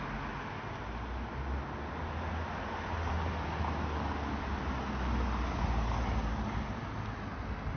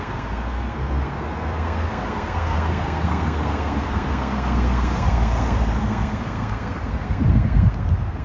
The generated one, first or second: second